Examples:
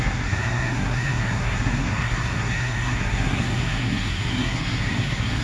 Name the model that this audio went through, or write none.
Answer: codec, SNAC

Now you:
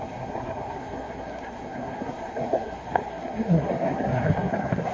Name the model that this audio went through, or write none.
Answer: codec, SNAC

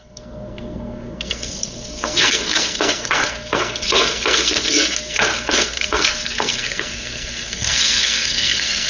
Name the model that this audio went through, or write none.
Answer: codec, SNAC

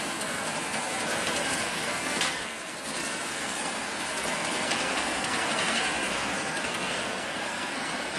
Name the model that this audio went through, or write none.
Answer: codec, SNAC